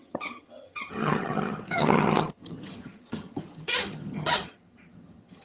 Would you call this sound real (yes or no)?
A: no